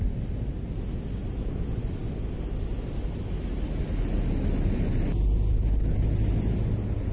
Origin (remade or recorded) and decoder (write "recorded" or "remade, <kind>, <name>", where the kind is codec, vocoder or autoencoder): recorded